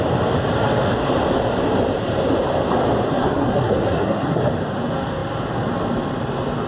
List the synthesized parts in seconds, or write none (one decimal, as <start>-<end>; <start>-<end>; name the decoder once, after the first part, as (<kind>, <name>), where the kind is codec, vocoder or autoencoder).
3.1-4.4 (codec, SNAC)